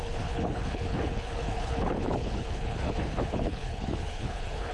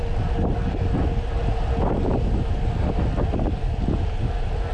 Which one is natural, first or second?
second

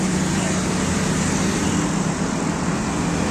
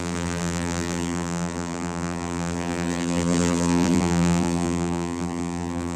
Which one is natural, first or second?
first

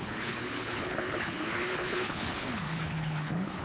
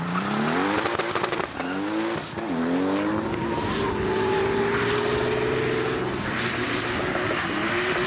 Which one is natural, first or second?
second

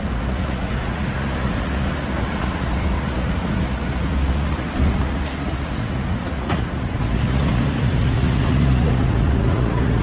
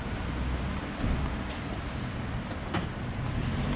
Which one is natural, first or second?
second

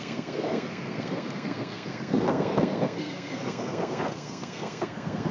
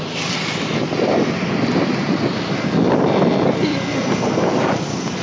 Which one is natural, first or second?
second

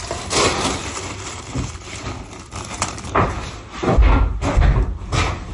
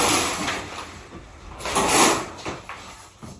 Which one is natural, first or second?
first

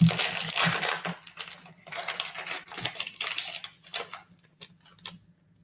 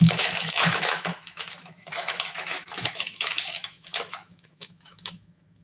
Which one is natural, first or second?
first